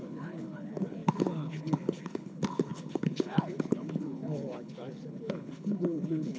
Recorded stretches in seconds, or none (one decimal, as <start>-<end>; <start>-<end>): none